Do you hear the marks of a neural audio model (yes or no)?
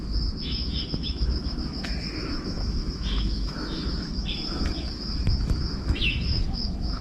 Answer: yes